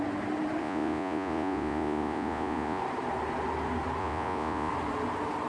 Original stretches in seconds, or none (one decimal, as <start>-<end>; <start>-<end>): 0.0-0.6; 2.8-4.0; 4.7-5.5